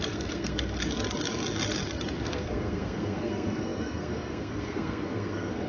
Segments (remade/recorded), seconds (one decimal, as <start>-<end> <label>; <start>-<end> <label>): 0.0-0.8 remade; 0.8-2.2 recorded; 2.2-5.7 remade